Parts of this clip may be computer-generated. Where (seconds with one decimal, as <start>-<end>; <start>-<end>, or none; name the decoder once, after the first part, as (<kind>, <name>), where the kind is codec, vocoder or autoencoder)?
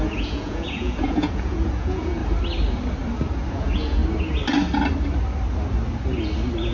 0.0-2.2 (vocoder, Vocos); 3.5-4.0